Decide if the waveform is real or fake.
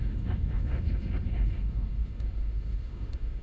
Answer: fake